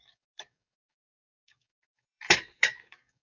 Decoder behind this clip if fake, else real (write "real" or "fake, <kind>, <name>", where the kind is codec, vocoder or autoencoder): fake, codec, DAC